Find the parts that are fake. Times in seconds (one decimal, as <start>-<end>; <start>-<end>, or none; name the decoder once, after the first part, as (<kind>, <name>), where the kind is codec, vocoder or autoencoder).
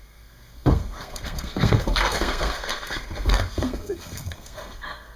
0.0-5.2 (codec, SNAC)